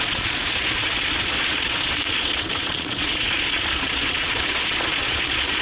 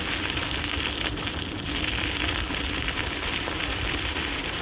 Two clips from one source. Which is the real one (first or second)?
second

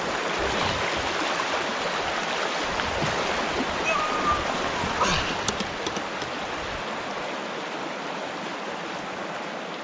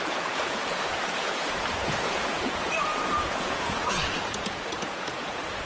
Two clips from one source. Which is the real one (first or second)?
first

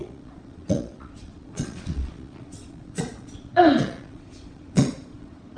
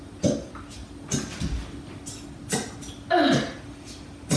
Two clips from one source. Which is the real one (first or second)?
second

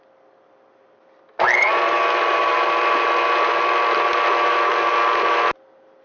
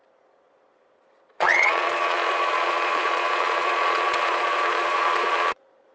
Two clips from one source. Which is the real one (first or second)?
first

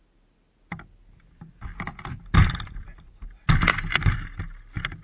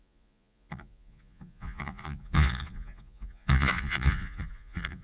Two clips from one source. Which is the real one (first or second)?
first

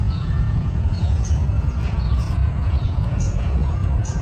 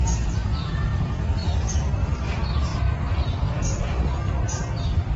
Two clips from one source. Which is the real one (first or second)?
second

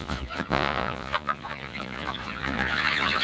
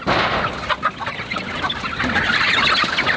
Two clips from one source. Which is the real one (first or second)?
second